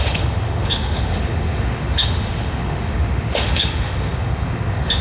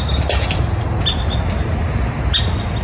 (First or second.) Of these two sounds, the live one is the second